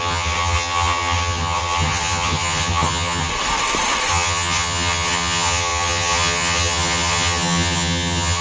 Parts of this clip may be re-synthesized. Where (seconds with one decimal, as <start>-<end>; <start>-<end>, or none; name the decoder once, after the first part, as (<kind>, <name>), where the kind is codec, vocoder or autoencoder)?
0.0-3.3 (vocoder, HiFi-GAN); 4.1-8.4